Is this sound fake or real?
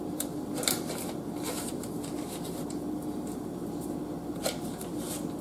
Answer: fake